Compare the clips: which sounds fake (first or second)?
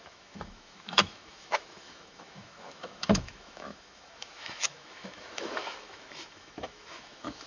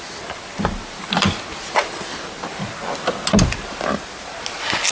first